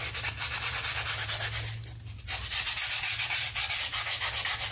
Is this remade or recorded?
recorded